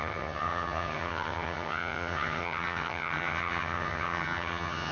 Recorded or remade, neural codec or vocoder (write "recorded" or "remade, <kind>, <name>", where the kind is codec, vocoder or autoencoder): remade, vocoder, HiFi-GAN